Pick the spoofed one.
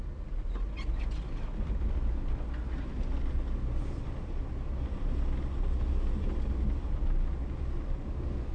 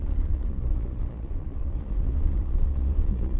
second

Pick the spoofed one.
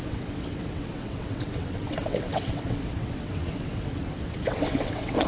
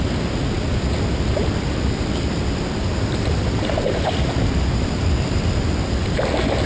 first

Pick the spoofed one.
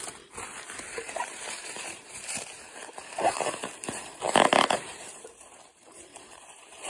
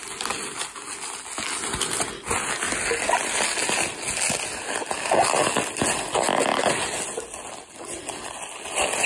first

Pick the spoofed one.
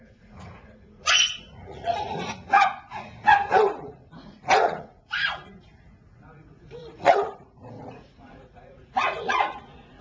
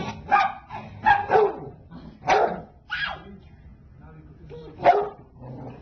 first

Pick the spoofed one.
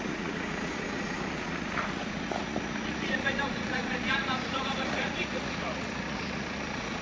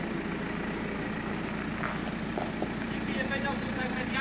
first